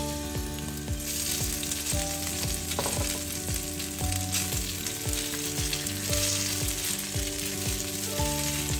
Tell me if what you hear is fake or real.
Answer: real